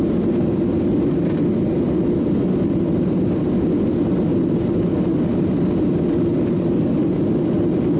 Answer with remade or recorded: recorded